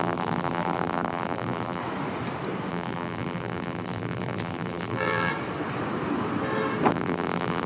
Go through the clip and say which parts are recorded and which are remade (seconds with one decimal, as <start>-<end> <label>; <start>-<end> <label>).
0.0-1.8 remade; 1.8-2.7 recorded; 2.7-5.3 remade; 5.3-6.9 recorded; 6.9-7.7 remade